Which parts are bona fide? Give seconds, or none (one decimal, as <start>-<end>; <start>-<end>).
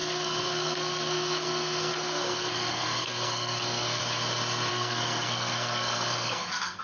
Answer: 4.0-4.7